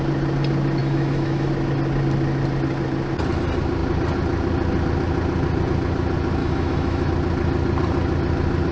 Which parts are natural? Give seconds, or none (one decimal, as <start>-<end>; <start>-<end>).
0.0-0.8; 1.5-6.4; 7.1-8.7

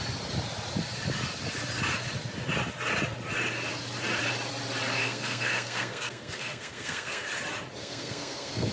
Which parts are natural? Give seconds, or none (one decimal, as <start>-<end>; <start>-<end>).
0.0-5.0; 7.3-7.8

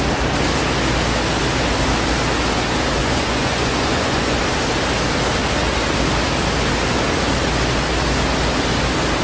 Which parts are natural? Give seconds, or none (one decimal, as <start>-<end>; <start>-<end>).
0.0-3.0; 4.4-9.2

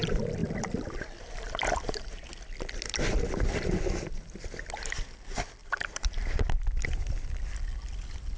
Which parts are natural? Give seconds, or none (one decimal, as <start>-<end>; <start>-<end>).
0.0-0.4; 2.3-5.6; 7.4-8.4

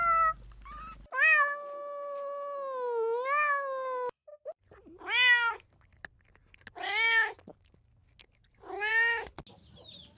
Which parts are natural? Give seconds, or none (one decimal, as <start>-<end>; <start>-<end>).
0.0-10.2

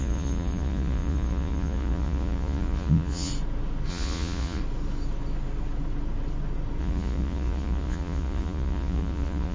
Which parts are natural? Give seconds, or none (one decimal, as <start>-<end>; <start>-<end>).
3.3-3.9; 4.6-6.8

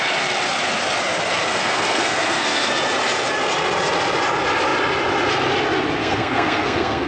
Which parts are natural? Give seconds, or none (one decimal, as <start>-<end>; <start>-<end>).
0.0-1.5; 2.7-6.0